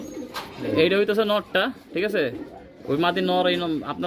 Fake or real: real